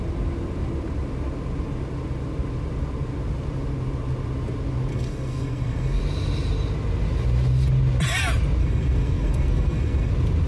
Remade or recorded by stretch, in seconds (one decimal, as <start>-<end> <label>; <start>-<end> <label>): 0.0-4.9 recorded; 4.9-6.0 remade; 6.0-8.6 recorded; 8.6-10.1 remade; 10.1-10.5 recorded